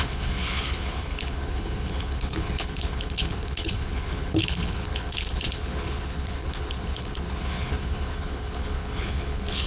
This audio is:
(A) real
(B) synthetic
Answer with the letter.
B